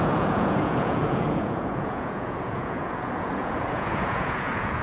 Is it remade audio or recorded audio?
remade